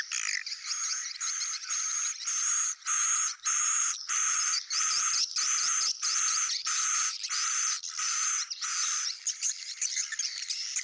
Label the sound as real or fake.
fake